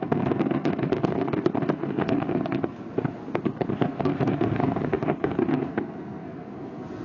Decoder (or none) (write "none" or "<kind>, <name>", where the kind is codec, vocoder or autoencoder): codec, SNAC